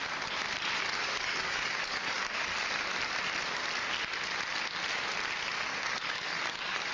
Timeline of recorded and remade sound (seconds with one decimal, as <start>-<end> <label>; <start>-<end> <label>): 0.0-1.0 recorded; 1.0-2.6 remade; 2.6-5.7 recorded; 5.7-6.9 remade